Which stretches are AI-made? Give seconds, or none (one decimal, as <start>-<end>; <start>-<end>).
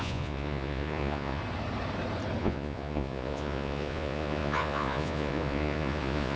0.0-1.4; 2.4-6.4